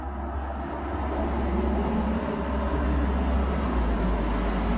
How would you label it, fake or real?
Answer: real